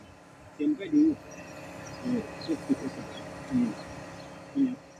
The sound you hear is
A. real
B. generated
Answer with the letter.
A